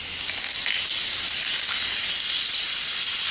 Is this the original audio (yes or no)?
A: yes